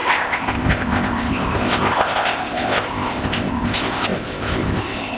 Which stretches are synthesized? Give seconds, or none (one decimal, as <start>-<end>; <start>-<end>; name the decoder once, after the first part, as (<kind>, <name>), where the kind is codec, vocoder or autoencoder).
0.0-5.2 (codec, ZipCodec)